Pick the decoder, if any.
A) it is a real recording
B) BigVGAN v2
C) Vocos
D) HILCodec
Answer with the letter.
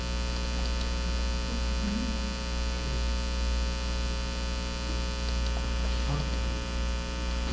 A